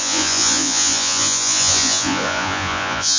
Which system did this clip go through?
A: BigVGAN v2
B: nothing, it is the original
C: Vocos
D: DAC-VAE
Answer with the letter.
C